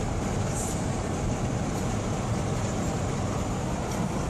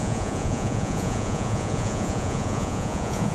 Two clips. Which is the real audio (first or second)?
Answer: first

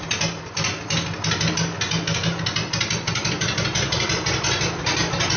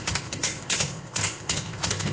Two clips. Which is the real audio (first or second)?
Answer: first